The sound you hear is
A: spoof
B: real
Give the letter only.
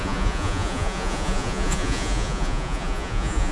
A